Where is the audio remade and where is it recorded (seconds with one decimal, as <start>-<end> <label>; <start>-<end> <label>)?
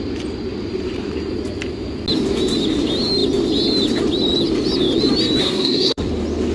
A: 0.0-5.4 recorded; 5.4-6.1 remade; 6.1-6.5 recorded